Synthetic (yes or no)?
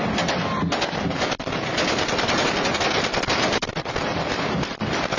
no